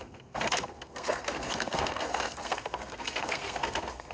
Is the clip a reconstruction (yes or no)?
yes